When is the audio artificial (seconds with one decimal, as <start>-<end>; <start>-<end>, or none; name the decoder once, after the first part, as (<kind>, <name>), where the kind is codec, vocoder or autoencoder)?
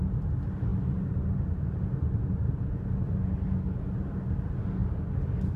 none